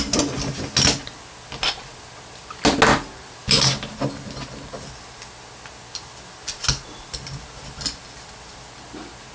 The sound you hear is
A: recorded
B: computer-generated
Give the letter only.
A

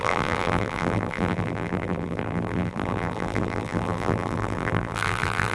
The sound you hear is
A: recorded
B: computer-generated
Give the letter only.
B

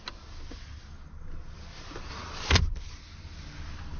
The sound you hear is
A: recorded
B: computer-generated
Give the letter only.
A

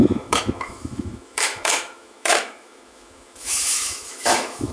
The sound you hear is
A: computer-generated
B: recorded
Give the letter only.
A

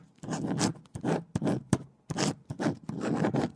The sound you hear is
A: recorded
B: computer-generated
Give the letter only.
A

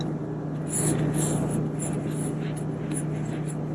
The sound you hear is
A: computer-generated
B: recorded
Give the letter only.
B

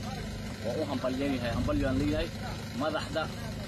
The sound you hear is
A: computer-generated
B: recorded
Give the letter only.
B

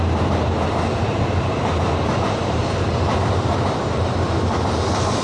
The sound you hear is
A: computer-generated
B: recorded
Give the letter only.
A